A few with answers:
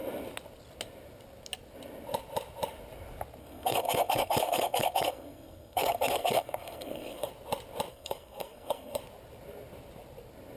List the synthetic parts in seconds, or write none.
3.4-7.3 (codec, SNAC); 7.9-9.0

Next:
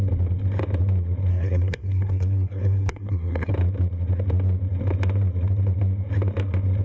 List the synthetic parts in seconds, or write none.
1.3-3.5 (codec, SNAC)

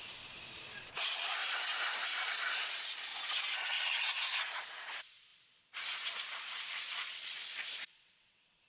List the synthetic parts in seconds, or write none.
0.0-1.4 (vocoder, Vocos); 2.2-3.1; 3.8-8.7

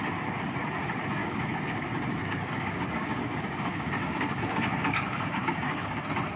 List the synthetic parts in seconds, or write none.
1.2-1.8 (codec, DAC); 2.2-6.0

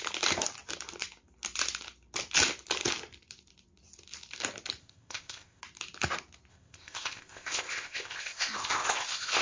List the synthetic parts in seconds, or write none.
4.8-5.6 (codec, ZipCodec); 6.5-9.4

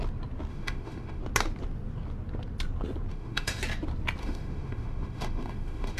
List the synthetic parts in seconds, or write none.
0.5-1.2 (autoencoder, DAC-VAE); 3.1-3.6; 4.2-6.0

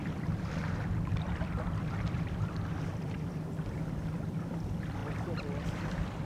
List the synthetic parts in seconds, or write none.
0.0-5.0 (vocoder, BigVGAN v2); 5.8-6.3

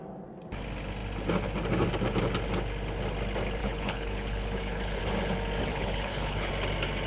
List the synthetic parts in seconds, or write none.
3.6-5.0 (codec, HILCodec); 5.7-6.5